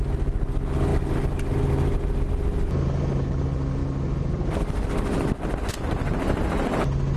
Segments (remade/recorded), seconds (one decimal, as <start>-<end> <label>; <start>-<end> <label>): 0.0-7.2 recorded